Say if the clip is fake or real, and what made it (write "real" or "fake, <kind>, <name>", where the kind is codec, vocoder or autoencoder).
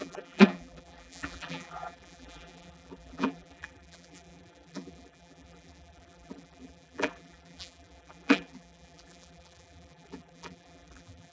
fake, vocoder, BigVGAN v2